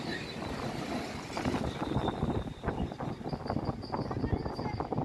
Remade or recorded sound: recorded